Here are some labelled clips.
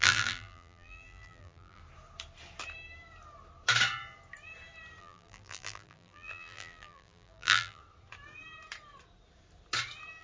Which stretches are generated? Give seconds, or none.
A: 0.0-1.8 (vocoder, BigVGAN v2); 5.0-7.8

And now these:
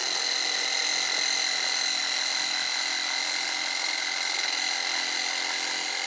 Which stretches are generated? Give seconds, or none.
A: none

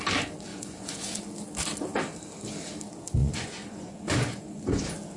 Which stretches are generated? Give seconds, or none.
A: 0.5-1.2 (vocoder, Vocos); 3.2-4.8

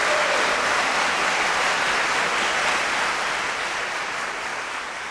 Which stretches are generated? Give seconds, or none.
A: none